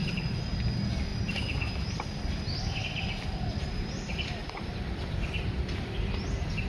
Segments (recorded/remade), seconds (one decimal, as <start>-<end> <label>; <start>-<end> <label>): 0.0-6.7 recorded